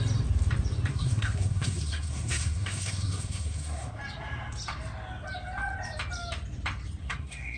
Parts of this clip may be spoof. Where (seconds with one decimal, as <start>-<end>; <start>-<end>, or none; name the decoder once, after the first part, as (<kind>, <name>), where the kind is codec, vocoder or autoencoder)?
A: 0.9-4.0 (codec, SNAC); 7.0-7.6